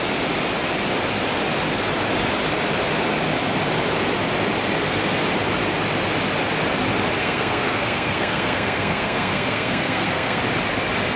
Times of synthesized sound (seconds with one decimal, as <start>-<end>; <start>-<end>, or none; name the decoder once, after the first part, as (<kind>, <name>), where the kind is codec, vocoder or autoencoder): 7.2-10.4 (codec, SNAC)